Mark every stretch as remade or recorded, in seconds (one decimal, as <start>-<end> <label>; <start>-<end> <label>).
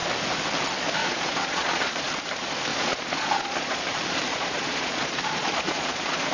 0.0-1.0 recorded; 1.0-2.1 remade; 2.1-2.7 recorded; 2.7-3.8 remade; 3.8-4.3 recorded; 4.3-6.3 remade